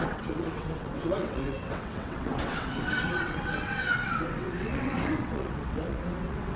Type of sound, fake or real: fake